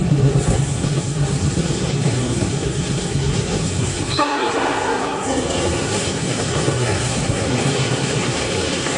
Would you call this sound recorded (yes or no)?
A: no